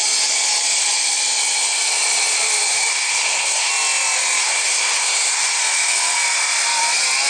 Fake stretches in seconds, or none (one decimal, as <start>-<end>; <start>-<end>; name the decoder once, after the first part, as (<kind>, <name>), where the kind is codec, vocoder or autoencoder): 2.9-3.7 (codec, SNAC); 4.4-5.6